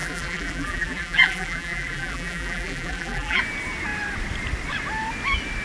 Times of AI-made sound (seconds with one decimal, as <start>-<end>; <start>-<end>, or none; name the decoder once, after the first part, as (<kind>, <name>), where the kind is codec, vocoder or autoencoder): 0.0-3.4 (vocoder, BigVGAN v2)